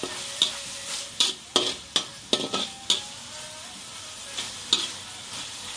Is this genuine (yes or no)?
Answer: yes